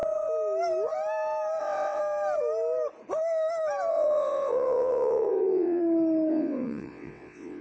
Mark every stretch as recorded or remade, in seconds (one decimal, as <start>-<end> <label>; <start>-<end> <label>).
0.0-1.6 recorded; 1.6-2.0 remade; 2.0-3.9 recorded; 3.9-5.8 remade; 5.8-6.3 recorded; 6.3-7.6 remade